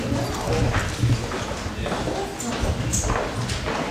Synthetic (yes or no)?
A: no